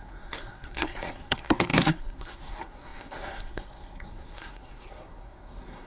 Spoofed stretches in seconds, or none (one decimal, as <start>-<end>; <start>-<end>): 0.0-5.9